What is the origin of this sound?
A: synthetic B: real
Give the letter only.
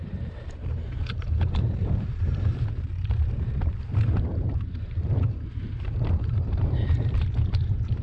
A